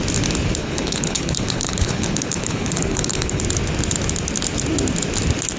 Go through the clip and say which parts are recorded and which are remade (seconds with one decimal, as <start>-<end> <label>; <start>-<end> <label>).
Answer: 0.0-0.6 recorded; 0.6-3.4 remade; 3.4-5.6 recorded